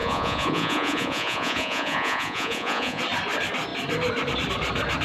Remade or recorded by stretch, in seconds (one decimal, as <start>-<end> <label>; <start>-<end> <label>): 0.0-3.0 remade; 3.0-5.0 recorded